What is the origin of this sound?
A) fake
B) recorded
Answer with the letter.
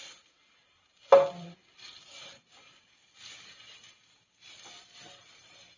B